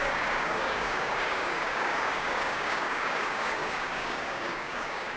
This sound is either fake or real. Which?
fake